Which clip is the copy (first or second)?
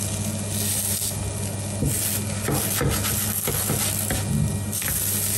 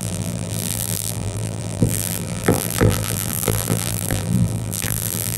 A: second